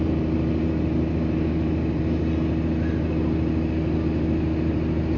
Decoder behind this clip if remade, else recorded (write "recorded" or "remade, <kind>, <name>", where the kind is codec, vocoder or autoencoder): recorded